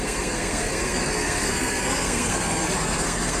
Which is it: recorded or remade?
remade